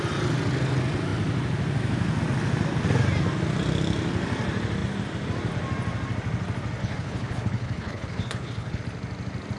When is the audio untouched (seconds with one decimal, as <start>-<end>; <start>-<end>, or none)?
0.0-6.8; 8.8-9.6